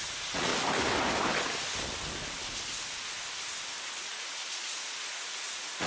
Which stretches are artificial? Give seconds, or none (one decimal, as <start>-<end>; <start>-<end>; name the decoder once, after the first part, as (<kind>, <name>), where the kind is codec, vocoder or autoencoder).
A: 0.0-0.5 (vocoder, Vocos); 4.0-5.9